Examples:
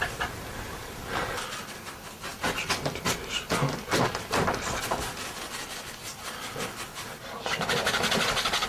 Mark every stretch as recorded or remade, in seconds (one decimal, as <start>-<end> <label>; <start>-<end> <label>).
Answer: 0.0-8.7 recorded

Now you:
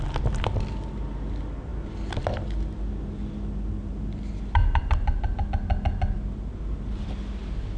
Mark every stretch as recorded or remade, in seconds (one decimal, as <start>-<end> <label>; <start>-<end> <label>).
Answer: 0.0-7.8 recorded

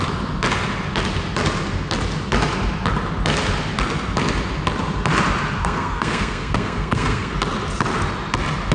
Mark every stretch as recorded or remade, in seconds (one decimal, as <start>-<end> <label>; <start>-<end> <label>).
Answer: 0.0-5.6 recorded; 5.6-7.3 remade; 7.3-8.7 recorded

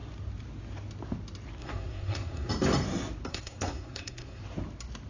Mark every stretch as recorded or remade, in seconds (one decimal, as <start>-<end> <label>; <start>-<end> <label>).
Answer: 0.0-1.6 recorded; 1.6-2.5 remade; 2.5-3.3 recorded; 3.3-4.4 remade; 4.4-5.1 recorded